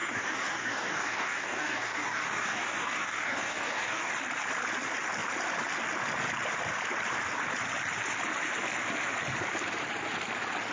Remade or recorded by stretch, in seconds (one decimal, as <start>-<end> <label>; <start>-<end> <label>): 0.0-4.1 remade; 4.1-10.7 recorded

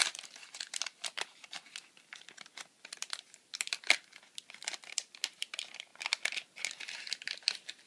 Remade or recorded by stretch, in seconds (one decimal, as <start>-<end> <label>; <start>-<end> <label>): 0.0-7.9 recorded